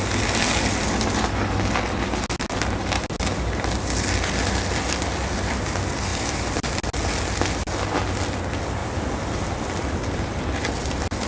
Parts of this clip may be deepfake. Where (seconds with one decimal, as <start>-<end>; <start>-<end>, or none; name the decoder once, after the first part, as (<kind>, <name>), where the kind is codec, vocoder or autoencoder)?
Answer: 6.1-6.7 (vocoder, BigVGAN v2); 8.8-11.3

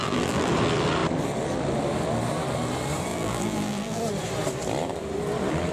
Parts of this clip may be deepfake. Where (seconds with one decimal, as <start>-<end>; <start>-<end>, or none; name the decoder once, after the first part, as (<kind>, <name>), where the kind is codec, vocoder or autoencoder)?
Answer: 0.0-0.5 (vocoder, BigVGAN v2); 3.1-4.0